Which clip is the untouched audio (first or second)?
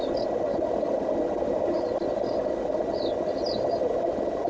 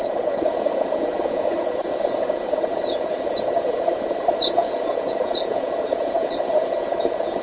first